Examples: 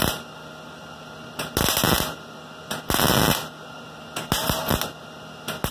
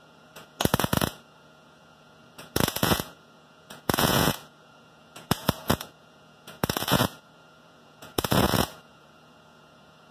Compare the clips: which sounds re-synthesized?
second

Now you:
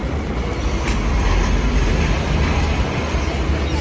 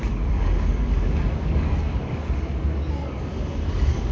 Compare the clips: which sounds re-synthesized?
second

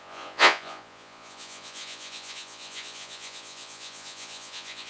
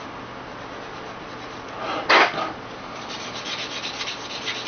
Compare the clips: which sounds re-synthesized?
first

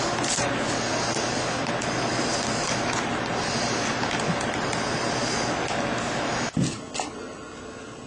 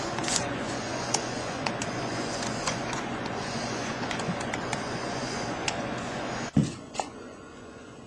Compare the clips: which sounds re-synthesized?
second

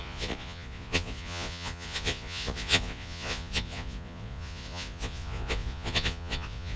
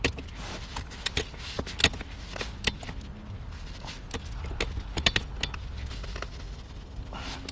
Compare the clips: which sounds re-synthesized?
first